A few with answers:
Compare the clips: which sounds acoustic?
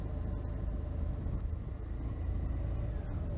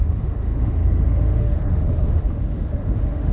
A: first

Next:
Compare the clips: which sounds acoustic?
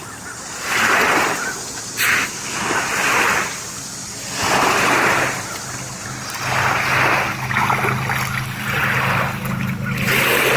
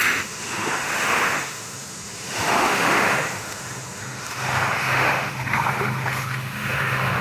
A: first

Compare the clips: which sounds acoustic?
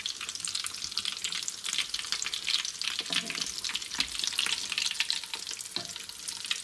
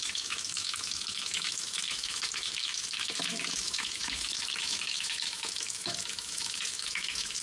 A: first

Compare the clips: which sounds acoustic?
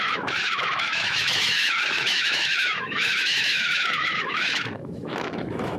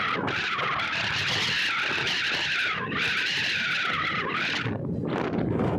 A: second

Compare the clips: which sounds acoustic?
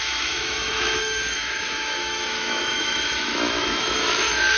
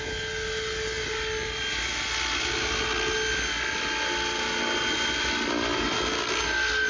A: second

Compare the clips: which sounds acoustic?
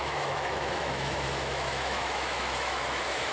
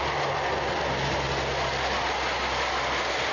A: second